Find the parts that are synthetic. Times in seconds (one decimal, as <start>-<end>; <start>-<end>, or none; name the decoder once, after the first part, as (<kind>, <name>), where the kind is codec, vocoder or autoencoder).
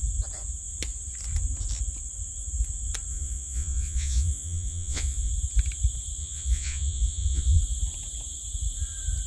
3.1-5.3 (vocoder, Vocos); 6.2-7.6